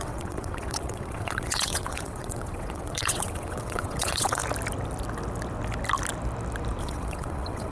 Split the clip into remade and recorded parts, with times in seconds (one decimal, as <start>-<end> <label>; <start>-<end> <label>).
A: 0.0-4.4 remade; 4.4-6.8 recorded; 6.8-7.7 remade

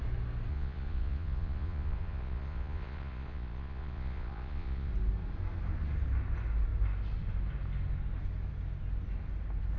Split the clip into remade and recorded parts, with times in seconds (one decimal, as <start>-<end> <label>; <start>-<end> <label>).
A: 0.0-0.5 recorded; 0.5-4.9 remade; 4.9-9.8 recorded

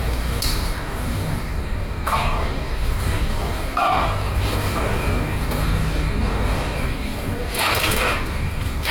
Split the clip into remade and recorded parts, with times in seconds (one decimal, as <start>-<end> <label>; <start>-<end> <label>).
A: 0.0-8.9 remade

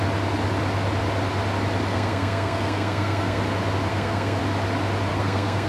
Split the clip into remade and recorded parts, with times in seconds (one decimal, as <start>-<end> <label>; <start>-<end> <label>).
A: 0.0-1.9 recorded; 1.9-3.4 remade; 3.4-3.9 recorded; 3.9-4.4 remade; 4.4-5.1 recorded; 5.1-5.7 remade